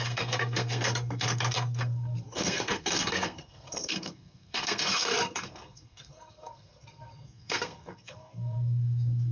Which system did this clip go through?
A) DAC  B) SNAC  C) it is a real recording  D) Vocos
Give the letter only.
B